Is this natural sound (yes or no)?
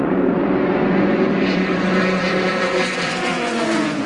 no